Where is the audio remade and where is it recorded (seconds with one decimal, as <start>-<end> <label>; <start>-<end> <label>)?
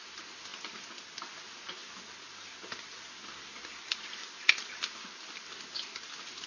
0.0-1.8 recorded; 1.8-5.7 remade; 5.7-6.5 recorded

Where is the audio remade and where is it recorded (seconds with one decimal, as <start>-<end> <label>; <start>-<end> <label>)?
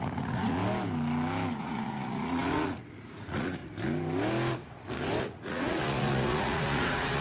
0.0-0.6 remade; 0.6-1.6 recorded; 1.6-3.6 remade; 3.6-5.2 recorded; 5.2-7.2 remade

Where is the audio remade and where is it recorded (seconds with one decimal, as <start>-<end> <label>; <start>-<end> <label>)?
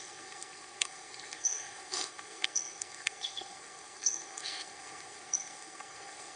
0.0-6.4 remade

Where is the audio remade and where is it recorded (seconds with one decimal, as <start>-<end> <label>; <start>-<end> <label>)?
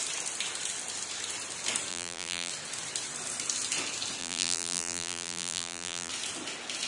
0.0-1.9 recorded; 1.9-2.5 remade; 2.5-4.2 recorded; 4.2-6.1 remade; 6.1-6.9 recorded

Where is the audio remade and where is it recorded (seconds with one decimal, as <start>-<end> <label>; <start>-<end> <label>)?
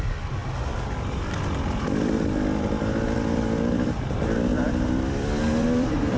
0.0-0.4 remade; 0.4-4.1 recorded; 4.1-6.2 remade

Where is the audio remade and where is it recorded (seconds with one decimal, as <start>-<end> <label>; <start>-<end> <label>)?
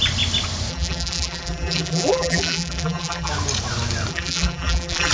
0.0-0.7 recorded; 0.7-3.3 remade; 3.3-4.1 recorded; 4.1-5.1 remade